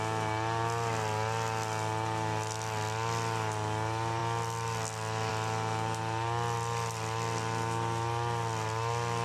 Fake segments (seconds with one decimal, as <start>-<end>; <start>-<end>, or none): none